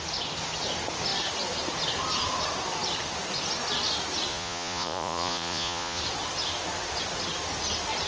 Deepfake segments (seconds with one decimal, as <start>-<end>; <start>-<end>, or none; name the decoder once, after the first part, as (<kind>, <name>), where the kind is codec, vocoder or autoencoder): 4.3-6.0 (vocoder, Vocos)

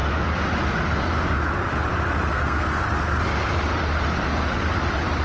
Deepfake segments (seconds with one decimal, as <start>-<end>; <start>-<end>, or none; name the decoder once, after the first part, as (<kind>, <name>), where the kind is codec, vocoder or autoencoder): 2.3-2.8 (codec, SNAC)

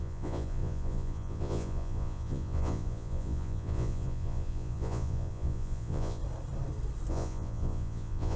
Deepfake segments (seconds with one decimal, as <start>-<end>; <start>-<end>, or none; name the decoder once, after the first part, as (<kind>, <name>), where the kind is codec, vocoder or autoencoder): 0.0-6.2 (vocoder, Vocos); 7.1-8.4

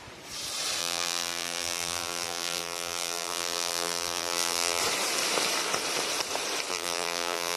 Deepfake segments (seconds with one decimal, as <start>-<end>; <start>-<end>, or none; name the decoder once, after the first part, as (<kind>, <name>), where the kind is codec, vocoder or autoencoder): 0.8-4.8 (vocoder, BigVGAN v2); 6.7-7.6

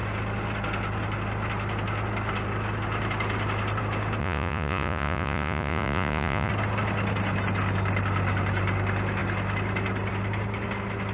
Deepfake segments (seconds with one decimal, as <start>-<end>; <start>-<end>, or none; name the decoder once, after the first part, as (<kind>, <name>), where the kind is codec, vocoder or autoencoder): 4.2-6.5 (vocoder, Vocos)

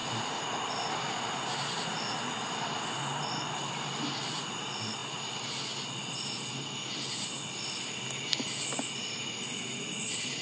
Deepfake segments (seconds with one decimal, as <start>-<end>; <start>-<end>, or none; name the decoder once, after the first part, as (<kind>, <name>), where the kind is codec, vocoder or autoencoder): none